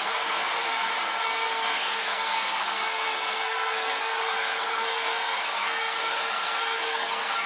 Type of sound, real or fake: fake